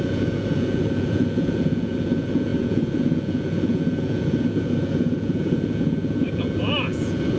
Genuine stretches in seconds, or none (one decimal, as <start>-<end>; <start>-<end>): none